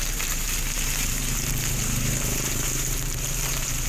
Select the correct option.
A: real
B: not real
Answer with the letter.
B